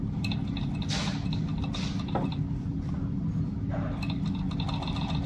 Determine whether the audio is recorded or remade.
recorded